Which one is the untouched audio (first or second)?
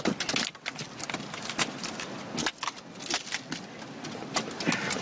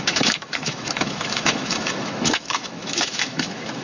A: first